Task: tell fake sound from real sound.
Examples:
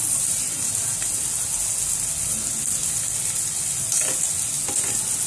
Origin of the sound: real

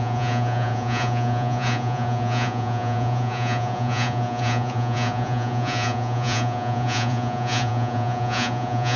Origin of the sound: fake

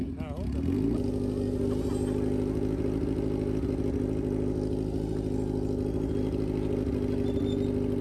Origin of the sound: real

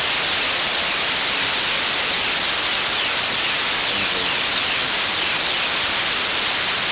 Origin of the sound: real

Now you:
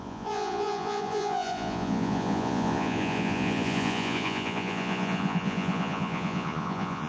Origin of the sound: fake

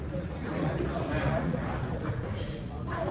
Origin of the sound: fake